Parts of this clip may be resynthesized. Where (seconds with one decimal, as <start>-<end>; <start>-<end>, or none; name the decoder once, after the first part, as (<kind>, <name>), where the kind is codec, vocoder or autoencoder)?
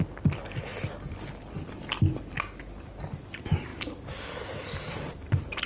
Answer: none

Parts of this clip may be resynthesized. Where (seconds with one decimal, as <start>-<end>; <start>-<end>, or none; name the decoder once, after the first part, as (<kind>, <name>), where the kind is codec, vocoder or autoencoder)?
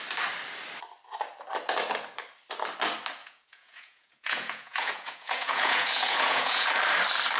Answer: 3.2-6.7 (vocoder, Vocos)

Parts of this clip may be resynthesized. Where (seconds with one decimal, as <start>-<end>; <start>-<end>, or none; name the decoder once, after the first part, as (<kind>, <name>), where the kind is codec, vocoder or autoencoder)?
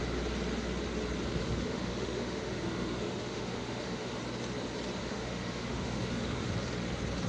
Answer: 1.4-4.2 (autoencoder, DAC-VAE); 5.0-6.5